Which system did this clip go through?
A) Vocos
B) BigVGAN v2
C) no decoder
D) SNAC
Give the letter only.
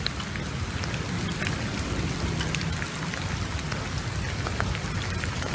C